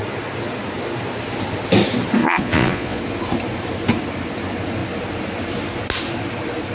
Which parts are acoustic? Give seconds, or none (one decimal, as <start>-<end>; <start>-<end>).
0.0-2.2; 3.0-6.7